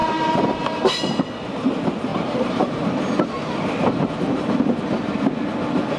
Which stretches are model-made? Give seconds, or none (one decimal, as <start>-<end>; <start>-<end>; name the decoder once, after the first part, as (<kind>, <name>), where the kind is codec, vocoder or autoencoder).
0.0-0.6 (vocoder, BigVGAN v2); 2.1-3.1

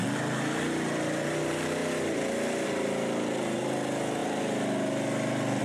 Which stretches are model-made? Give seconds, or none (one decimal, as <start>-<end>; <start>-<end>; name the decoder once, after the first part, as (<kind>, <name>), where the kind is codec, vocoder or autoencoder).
none